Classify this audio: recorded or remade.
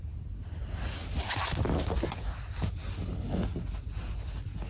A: recorded